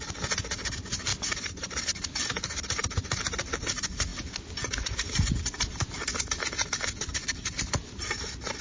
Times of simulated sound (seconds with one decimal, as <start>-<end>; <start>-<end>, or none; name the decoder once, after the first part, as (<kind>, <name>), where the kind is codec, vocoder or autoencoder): none